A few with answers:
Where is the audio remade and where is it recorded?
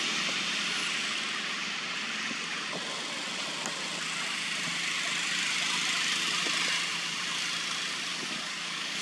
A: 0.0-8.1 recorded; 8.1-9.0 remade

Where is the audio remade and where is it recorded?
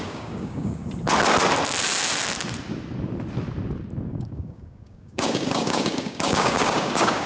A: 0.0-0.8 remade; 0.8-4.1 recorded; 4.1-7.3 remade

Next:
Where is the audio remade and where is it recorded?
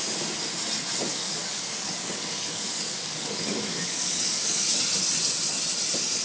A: 0.0-1.1 recorded; 1.1-4.8 remade; 4.8-6.2 recorded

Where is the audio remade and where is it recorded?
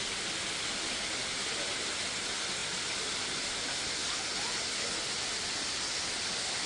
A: 0.0-6.7 recorded